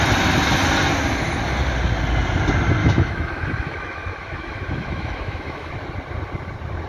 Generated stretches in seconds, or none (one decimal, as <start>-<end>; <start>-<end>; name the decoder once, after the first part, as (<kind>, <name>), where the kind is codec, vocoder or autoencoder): 2.8-5.7 (autoencoder, DAC-VAE)